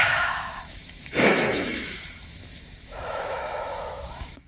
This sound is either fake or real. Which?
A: fake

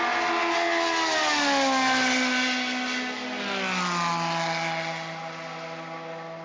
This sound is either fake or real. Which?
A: real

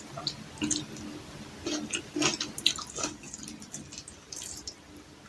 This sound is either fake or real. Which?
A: real